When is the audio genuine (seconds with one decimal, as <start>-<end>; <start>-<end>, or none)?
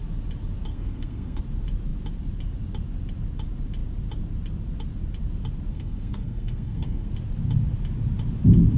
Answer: 0.0-0.7; 1.4-5.7; 7.1-8.8